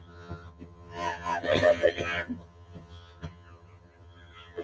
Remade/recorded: remade